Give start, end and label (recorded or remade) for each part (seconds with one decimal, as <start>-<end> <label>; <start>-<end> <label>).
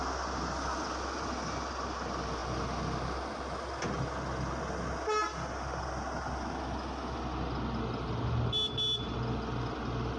0.0-10.2 recorded